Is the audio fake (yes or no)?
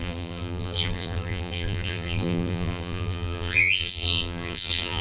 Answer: yes